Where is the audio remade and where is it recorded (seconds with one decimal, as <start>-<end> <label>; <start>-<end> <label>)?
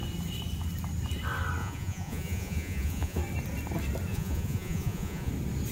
0.0-1.6 recorded; 1.6-3.2 remade; 3.2-4.1 recorded; 4.1-5.3 remade; 5.3-5.7 recorded